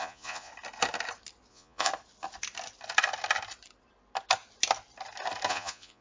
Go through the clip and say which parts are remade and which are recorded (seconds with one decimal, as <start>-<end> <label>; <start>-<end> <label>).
0.0-0.5 remade; 0.5-1.5 recorded; 1.5-1.9 remade; 1.9-5.5 recorded; 5.5-6.0 remade